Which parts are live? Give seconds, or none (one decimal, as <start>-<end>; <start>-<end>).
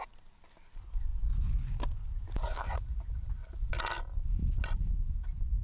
0.0-5.6